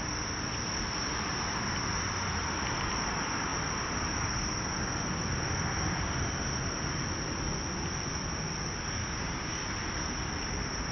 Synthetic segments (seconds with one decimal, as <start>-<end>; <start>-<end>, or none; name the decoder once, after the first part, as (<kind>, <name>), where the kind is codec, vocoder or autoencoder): 9.0-9.6 (codec, DAC)